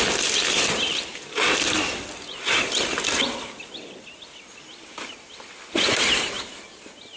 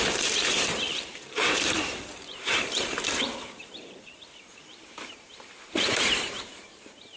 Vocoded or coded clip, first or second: second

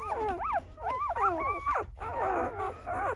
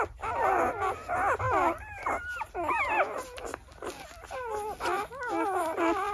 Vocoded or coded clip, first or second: first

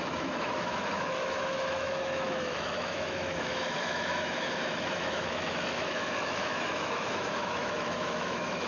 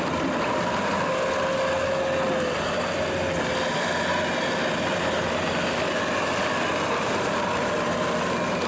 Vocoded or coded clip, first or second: first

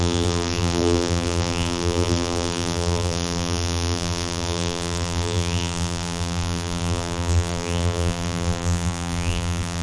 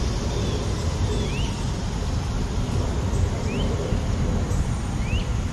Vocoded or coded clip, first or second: first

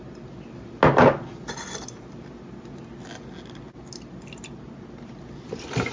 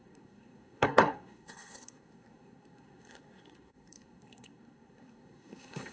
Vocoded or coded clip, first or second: second